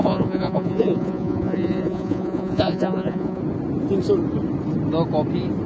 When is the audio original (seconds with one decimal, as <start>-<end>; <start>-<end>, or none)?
3.4-5.7